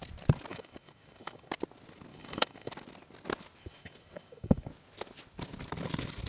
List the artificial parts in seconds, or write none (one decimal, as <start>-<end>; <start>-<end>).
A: 0.5-1.5; 2.1-2.7; 3.6-4.7

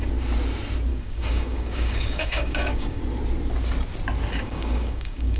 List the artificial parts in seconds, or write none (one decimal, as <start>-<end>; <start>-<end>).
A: 0.9-3.0; 4.2-5.4